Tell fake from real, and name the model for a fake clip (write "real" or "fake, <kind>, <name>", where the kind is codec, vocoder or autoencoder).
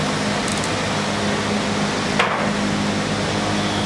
real